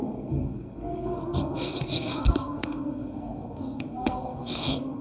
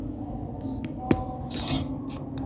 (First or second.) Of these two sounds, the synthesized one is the first